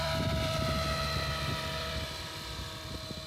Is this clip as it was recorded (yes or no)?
no